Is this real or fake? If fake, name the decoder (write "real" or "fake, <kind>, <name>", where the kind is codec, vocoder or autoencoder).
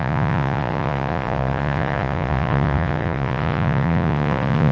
fake, vocoder, Vocos